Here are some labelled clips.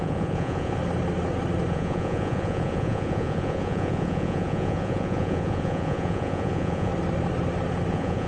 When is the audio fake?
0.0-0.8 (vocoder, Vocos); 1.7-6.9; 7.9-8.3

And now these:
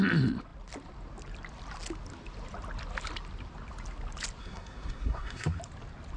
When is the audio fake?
4.4-5.6 (codec, SNAC)